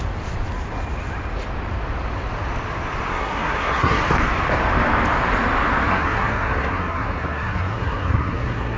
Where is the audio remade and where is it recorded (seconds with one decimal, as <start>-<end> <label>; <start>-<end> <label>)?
0.0-3.1 recorded; 3.1-4.0 remade; 4.0-5.9 recorded; 5.9-8.8 remade